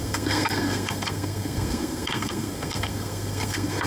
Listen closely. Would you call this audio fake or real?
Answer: fake